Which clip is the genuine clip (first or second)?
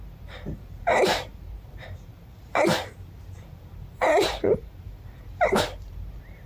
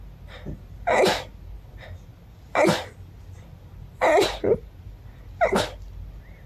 second